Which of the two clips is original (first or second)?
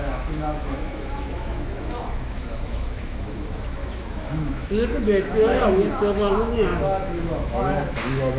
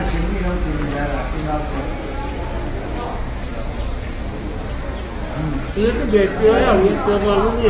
second